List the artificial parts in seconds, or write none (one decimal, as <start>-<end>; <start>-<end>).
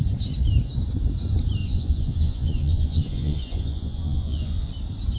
1.6-4.7